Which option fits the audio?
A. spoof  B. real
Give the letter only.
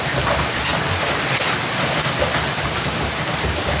B